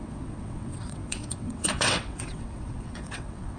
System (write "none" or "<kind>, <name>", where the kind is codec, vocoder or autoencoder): vocoder, WaveNeXt